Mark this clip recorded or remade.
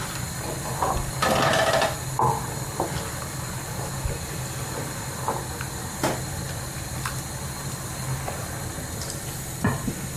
recorded